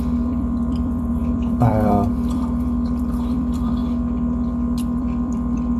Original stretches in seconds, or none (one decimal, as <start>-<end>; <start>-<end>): 3.8-5.0

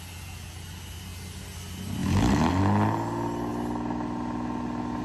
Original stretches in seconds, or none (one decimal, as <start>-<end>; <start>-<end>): 0.0-5.0